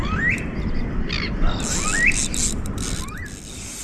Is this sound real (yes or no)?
yes